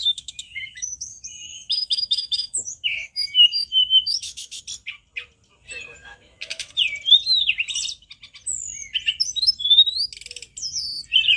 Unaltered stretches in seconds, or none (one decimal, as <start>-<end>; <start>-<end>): 4.6-6.0; 6.7-11.4